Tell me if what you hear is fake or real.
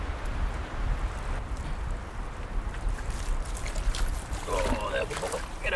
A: real